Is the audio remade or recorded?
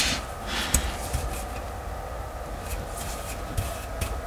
recorded